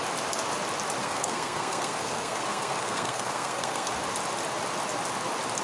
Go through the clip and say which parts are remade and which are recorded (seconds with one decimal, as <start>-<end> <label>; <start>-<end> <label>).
0.0-1.0 recorded; 1.0-3.9 remade; 3.9-5.6 recorded